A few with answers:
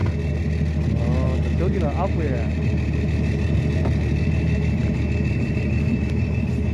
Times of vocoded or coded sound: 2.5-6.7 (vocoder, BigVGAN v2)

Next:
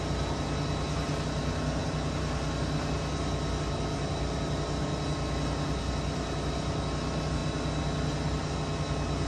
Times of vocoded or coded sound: none

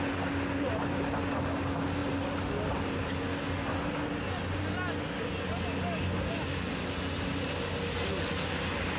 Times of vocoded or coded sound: none

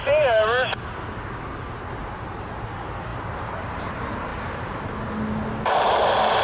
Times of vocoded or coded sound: 0.0-1.0 (vocoder, BigVGAN v2); 2.0-2.5; 3.1-3.9; 4.3-4.9

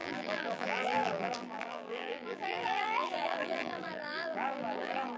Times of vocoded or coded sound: 0.0-5.2 (vocoder, BigVGAN v2)

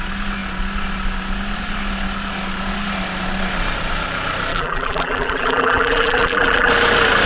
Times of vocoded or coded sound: 4.5-6.7 (vocoder, BigVGAN v2)